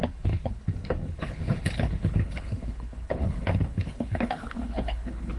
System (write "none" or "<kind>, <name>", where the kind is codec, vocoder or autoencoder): codec, HILCodec